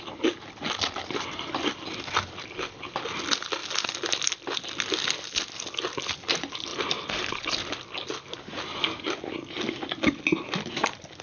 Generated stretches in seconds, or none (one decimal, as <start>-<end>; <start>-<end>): none